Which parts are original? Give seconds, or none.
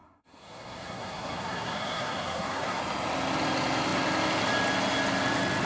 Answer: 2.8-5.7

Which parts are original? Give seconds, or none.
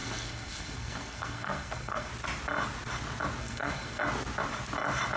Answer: 2.1-3.4; 4.0-5.2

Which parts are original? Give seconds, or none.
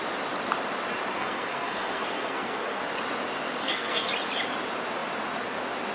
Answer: 0.0-1.1; 2.8-3.6; 4.1-5.9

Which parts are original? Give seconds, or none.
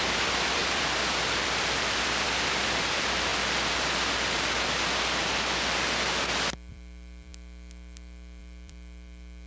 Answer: 3.3-6.7; 7.3-8.4